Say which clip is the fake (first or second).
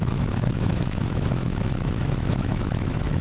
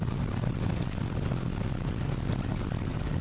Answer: first